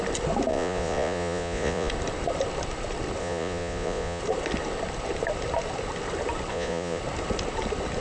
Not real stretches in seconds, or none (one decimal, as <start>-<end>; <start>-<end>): 0.5-1.9; 3.2-4.2; 6.5-7.0